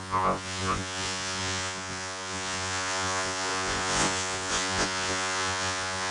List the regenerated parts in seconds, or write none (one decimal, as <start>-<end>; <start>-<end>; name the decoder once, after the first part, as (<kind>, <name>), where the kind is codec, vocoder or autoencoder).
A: 0.0-6.1 (vocoder, Vocos)